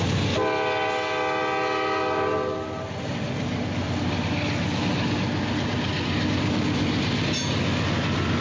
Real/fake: real